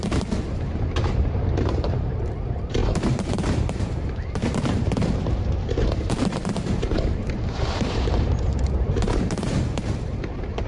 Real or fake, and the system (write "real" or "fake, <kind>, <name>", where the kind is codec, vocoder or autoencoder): fake, vocoder, BigVGAN v2